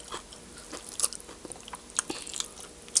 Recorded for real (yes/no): yes